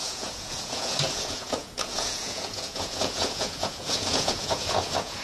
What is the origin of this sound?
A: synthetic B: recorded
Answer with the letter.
A